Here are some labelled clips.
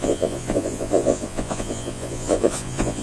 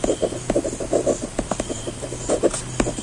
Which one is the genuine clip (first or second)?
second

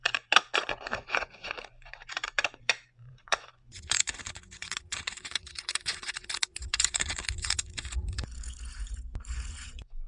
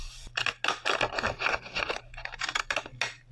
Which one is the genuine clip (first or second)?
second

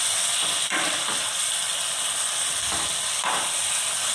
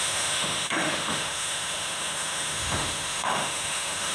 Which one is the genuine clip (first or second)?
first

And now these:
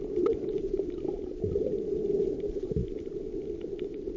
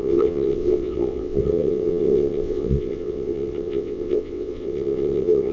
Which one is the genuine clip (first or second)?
first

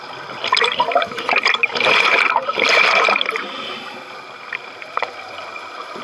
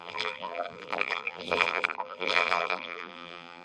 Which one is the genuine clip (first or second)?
first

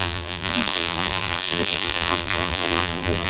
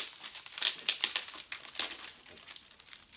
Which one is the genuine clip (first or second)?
second